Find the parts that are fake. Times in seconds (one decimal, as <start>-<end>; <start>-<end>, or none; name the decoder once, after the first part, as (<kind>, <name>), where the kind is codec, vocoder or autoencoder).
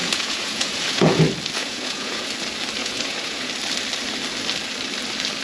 0.0-1.2 (vocoder, Vocos); 1.6-2.3; 2.8-3.5